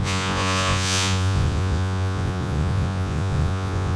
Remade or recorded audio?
remade